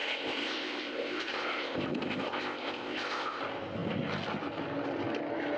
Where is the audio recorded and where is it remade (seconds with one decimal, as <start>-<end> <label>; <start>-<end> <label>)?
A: 0.0-3.4 remade; 3.4-5.6 recorded